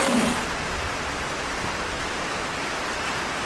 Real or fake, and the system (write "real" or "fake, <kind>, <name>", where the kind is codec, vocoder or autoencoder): real